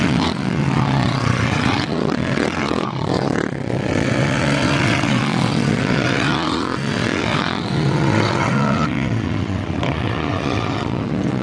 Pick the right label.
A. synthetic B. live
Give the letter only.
A